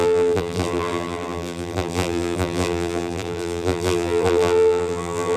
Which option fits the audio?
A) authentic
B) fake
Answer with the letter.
B